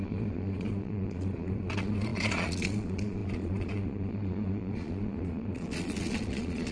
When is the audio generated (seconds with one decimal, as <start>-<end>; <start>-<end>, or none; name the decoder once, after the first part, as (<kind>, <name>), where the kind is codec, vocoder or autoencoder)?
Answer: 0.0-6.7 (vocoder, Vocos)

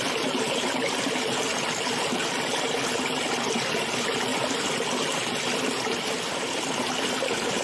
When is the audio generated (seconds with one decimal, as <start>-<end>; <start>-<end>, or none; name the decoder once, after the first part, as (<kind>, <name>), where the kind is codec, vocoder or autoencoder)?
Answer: none

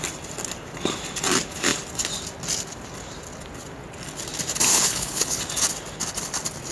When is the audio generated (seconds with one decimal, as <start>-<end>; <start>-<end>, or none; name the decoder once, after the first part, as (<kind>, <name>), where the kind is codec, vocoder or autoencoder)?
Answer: 4.7-5.4 (codec, HILCodec)